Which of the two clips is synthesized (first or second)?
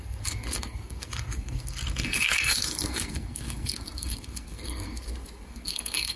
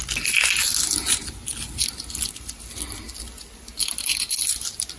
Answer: first